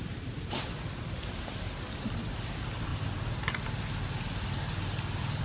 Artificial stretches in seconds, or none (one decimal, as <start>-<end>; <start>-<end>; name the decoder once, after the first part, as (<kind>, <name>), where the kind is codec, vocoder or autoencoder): none